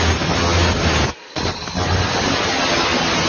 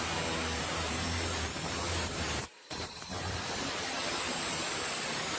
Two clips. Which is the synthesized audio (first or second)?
second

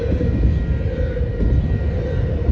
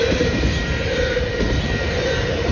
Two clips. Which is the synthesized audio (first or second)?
second